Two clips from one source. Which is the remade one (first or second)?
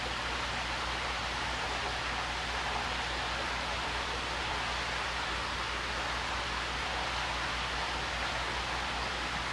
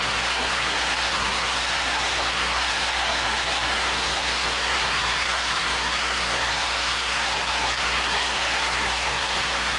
second